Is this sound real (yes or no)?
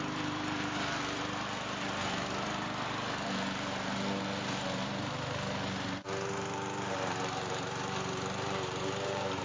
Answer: no